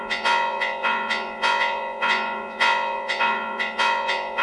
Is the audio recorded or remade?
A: remade